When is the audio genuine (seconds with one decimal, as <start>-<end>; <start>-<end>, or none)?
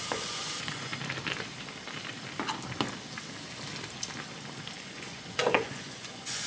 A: 0.9-4.8